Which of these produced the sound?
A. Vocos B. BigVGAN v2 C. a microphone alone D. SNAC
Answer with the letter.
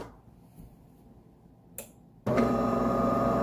C